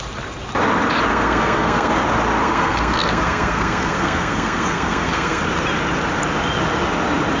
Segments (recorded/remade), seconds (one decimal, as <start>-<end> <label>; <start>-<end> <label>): 0.0-1.1 recorded; 1.1-1.9 remade; 1.9-2.4 recorded; 2.4-5.4 remade; 5.4-7.4 recorded